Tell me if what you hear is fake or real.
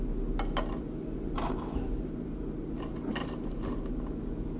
real